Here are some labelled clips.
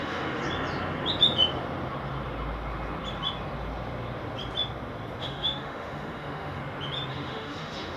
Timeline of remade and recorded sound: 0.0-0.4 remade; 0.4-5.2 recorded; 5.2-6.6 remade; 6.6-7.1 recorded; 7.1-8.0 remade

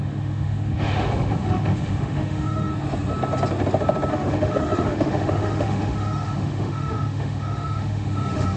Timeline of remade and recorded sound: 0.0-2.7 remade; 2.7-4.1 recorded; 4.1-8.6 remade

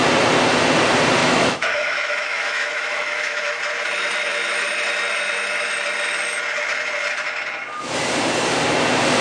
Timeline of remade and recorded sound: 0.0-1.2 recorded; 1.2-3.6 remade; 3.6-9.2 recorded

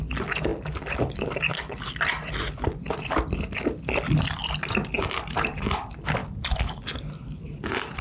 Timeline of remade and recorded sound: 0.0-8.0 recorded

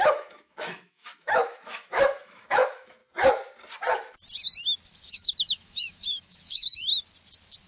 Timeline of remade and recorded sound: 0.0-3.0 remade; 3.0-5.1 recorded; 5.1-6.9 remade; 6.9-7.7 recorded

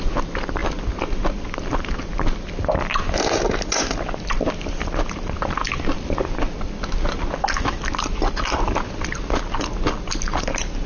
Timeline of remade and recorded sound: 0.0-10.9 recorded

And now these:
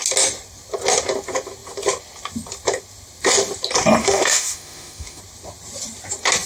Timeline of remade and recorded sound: 0.0-4.0 recorded; 4.0-5.2 remade; 5.2-6.5 recorded

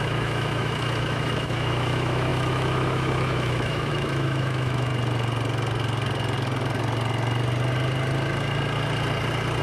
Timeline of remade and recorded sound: 0.0-4.9 remade; 4.9-9.6 recorded